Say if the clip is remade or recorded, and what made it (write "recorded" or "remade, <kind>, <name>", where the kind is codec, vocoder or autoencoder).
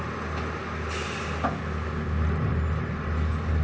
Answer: recorded